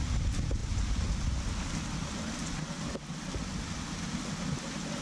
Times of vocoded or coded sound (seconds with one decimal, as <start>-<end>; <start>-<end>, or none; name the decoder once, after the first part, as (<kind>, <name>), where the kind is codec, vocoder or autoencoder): none

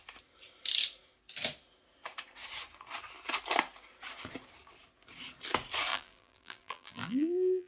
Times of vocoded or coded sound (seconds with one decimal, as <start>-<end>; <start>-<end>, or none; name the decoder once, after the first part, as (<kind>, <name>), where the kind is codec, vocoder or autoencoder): 5.9-7.7 (vocoder, BigVGAN v2)